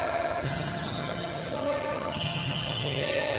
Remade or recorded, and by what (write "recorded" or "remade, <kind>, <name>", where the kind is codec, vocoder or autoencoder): remade, vocoder, HiFi-GAN